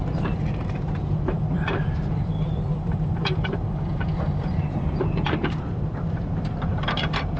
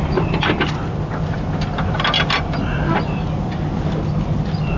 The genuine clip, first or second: second